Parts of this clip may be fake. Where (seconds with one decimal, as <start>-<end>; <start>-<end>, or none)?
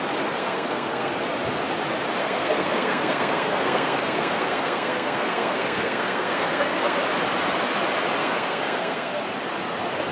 0.4-1.1; 2.2-7.0; 8.2-9.2